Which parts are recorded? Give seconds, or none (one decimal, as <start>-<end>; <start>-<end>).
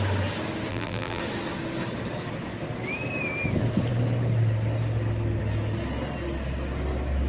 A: 0.0-0.7; 1.2-7.3